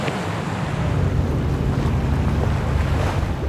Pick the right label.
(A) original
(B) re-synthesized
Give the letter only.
A